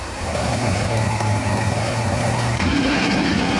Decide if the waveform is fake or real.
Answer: fake